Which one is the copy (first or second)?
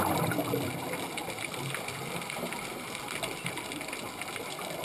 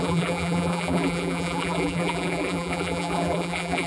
second